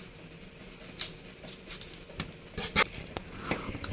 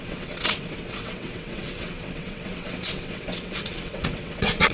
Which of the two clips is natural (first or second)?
first